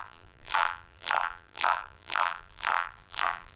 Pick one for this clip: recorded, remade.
remade